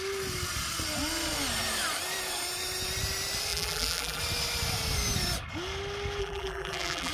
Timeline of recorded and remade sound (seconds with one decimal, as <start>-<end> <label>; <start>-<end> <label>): 0.0-3.5 recorded; 3.5-4.2 remade; 4.2-6.2 recorded; 6.2-7.1 remade